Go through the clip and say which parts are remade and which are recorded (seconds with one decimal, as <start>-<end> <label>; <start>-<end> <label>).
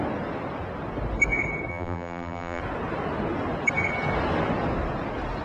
0.0-1.7 recorded; 1.7-2.6 remade; 2.6-5.4 recorded